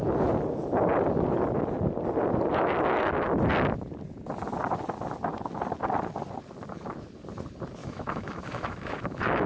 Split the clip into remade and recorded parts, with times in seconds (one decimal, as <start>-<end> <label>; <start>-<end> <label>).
0.0-7.8 recorded; 7.8-9.5 remade